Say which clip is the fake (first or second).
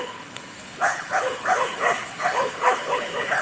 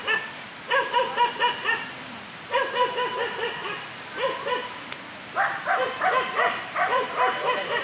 first